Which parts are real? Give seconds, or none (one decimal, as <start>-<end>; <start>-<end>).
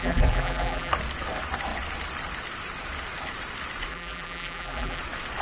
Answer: 0.9-3.9; 5.0-5.4